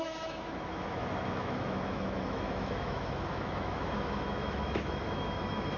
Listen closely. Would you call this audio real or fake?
fake